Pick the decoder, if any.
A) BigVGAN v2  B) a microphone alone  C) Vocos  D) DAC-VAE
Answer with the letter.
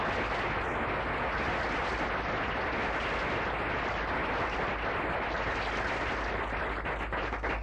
B